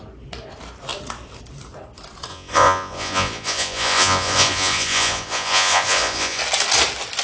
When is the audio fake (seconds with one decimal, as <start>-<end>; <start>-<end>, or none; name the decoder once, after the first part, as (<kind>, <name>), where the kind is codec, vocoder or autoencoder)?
2.3-6.4 (vocoder, Vocos)